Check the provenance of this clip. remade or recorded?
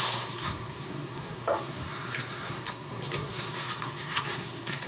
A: remade